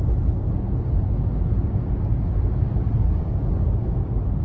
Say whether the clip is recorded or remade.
recorded